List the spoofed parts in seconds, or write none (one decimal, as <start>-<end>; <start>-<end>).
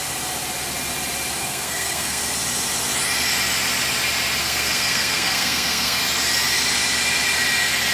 1.4-2.2; 4.4-6.0